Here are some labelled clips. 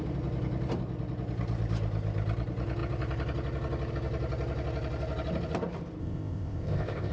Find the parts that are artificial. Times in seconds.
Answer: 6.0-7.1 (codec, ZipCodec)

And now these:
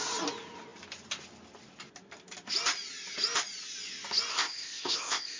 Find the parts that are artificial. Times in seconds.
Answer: 4.3-5.4 (codec, ZipCodec)

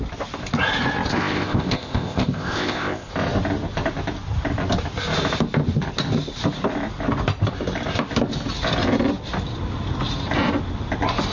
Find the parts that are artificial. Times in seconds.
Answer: 1.1-3.1 (codec, ZipCodec)